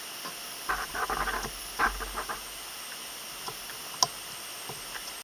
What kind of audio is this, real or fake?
real